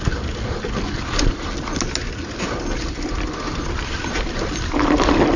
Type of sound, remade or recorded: recorded